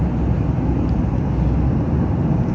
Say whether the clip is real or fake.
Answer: real